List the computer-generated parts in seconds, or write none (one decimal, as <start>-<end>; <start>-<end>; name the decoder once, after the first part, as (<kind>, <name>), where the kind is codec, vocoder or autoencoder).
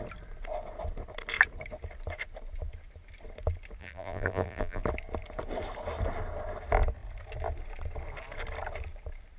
3.8-4.8 (vocoder, BigVGAN v2)